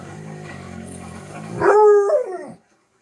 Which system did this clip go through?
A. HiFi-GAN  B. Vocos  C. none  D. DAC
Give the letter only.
D